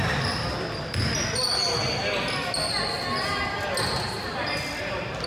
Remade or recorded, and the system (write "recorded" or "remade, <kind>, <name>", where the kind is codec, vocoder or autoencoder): recorded